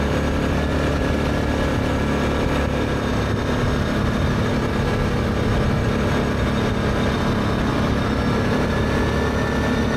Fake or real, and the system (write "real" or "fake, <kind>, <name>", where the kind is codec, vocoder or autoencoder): real